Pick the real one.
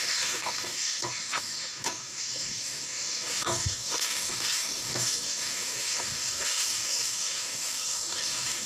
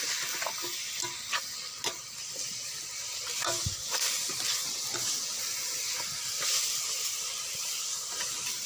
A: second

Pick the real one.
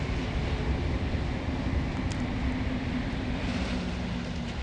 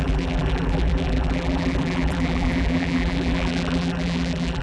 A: first